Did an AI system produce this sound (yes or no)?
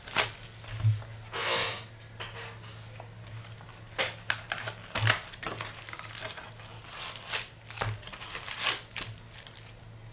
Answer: no